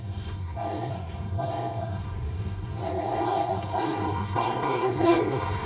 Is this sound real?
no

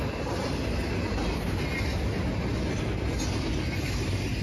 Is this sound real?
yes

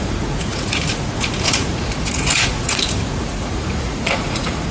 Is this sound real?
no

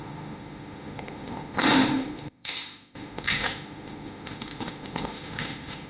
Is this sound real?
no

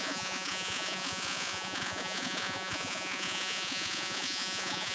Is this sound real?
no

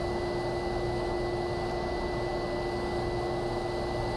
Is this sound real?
yes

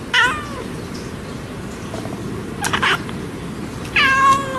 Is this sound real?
yes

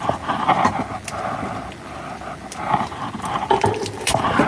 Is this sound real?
no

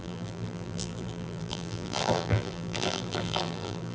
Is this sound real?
no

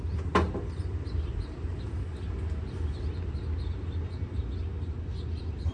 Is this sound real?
yes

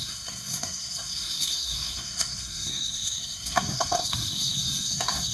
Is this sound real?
no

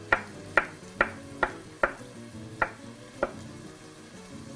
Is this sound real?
yes